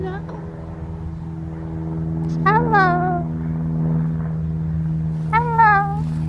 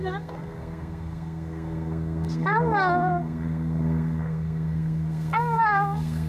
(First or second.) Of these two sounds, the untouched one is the first